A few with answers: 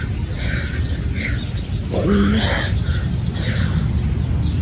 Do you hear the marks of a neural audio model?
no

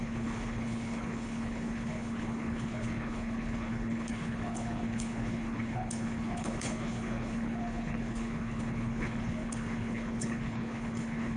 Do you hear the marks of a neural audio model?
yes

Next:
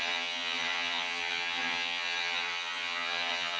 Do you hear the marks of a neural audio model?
yes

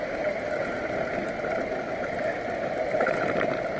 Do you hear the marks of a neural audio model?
no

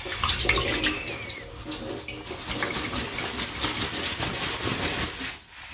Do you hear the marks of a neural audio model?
no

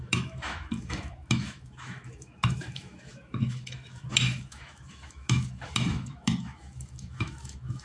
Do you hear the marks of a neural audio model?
yes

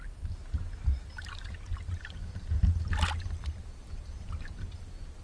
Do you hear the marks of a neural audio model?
no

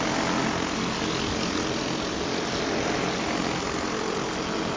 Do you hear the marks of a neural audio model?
no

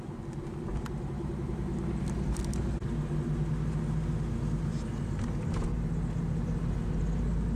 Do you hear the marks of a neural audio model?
no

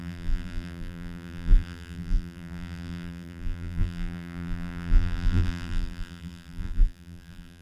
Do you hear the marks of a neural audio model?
yes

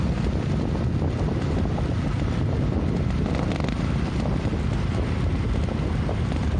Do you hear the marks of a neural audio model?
yes